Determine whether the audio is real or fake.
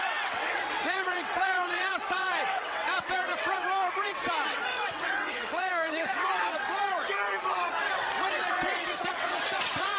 fake